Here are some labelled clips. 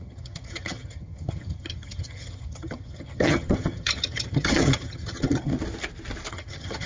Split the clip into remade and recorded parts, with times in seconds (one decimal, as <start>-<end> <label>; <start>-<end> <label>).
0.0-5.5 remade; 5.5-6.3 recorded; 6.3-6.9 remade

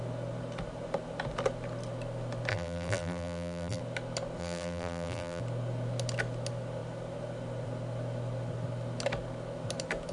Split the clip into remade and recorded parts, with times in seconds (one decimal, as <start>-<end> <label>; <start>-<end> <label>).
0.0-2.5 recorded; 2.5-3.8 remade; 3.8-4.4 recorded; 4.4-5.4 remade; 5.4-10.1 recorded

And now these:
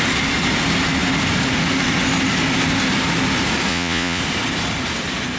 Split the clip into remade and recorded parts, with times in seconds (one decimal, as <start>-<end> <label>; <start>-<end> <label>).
0.0-3.7 recorded; 3.7-4.2 remade; 4.2-5.4 recorded